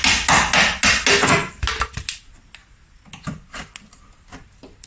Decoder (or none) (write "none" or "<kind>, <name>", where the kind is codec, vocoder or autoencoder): none